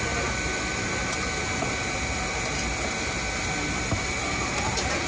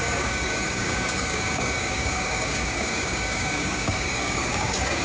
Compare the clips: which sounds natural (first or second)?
first